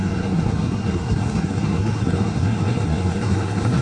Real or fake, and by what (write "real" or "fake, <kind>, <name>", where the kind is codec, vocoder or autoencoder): fake, codec, SNAC